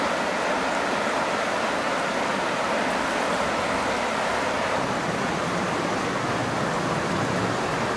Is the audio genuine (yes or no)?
yes